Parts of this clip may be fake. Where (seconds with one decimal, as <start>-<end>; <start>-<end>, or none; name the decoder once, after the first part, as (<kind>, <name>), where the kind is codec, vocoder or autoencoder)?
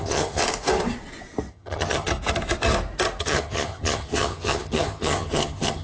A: 0.0-0.4 (vocoder, HiFi-GAN); 1.5-2.1; 3.2-5.8